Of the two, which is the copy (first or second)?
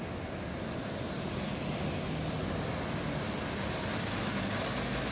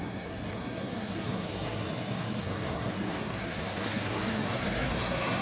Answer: second